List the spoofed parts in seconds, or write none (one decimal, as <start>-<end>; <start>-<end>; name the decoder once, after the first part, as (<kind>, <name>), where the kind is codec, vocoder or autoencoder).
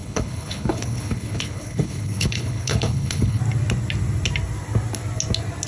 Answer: 0.0-3.4 (codec, HILCodec)